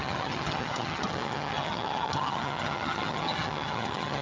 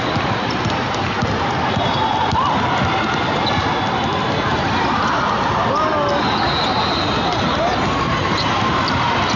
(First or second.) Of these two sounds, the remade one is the first